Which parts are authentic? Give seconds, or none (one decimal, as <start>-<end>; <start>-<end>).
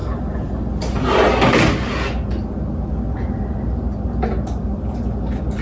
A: 0.0-5.6